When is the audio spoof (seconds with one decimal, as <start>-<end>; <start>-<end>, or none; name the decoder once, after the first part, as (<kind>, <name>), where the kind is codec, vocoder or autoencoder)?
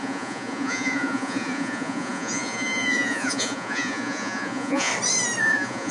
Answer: 0.0-4.9 (vocoder, Vocos); 5.4-5.9